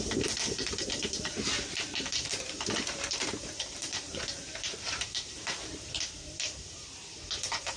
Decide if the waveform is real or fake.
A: fake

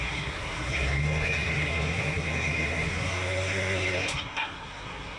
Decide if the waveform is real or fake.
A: fake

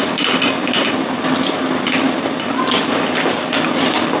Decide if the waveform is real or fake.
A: fake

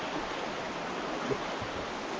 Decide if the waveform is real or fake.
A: real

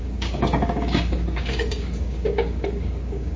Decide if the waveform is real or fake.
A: fake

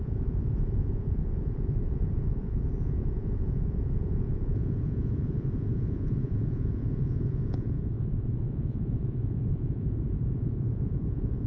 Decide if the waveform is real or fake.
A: fake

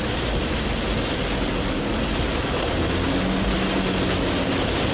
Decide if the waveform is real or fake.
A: real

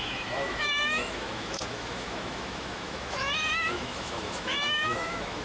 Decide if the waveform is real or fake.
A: fake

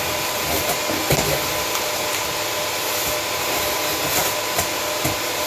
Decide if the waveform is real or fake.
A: real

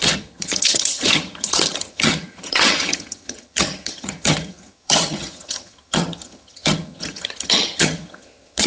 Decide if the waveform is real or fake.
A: fake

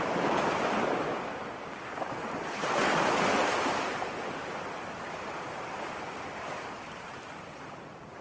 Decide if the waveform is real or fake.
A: real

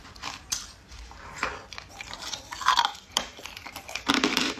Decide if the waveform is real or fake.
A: fake